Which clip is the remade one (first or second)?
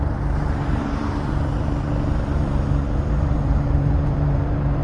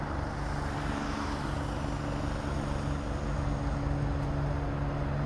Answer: first